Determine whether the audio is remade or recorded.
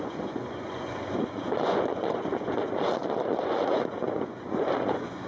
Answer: remade